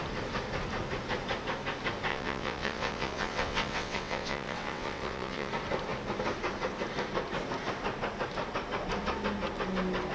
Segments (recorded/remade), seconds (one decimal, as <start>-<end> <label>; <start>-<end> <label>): 0.0-2.1 recorded; 2.1-5.5 remade; 5.5-10.1 recorded